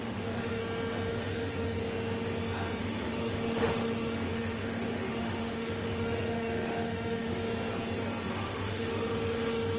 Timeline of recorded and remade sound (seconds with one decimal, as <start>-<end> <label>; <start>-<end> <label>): 0.0-0.6 remade; 0.6-1.1 recorded; 1.1-1.8 remade; 1.8-2.8 recorded; 2.8-7.3 remade; 7.3-8.3 recorded; 8.3-9.8 remade